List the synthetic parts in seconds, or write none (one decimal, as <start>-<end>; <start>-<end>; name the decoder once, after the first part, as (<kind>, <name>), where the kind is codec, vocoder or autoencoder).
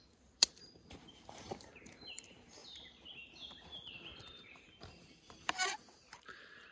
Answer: 0.0-6.7 (vocoder, BigVGAN v2)